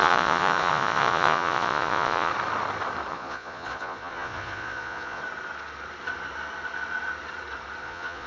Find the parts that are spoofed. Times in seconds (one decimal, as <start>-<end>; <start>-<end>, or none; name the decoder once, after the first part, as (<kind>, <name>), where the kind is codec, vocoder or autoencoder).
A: 0.0-2.3 (vocoder, Vocos); 3.1-5.2; 7.8-8.3